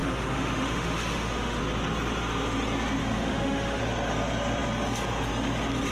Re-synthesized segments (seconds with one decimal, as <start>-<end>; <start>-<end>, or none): 0.0-1.6; 3.0-3.8